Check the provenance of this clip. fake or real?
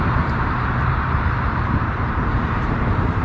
fake